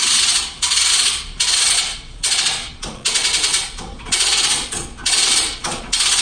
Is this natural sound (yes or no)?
no